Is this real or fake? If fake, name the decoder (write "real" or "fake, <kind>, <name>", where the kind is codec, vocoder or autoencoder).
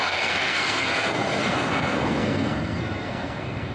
fake, codec, SNAC